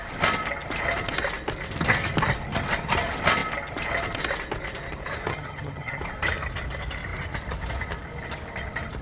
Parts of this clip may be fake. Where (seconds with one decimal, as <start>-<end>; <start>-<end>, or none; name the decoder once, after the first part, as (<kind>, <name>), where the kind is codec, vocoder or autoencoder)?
5.3-6.0 (vocoder, HiFi-GAN)